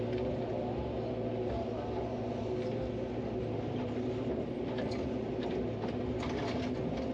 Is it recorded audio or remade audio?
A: recorded